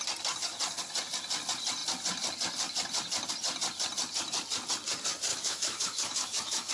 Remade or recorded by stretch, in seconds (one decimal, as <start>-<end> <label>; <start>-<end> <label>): 0.0-5.3 recorded; 5.3-6.7 remade